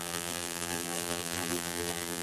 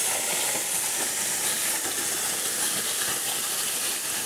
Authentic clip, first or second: second